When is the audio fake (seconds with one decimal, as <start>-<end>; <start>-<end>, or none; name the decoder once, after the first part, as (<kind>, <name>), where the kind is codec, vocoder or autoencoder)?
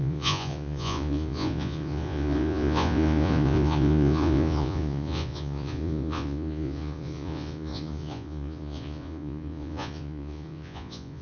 0.0-11.2 (vocoder, Vocos)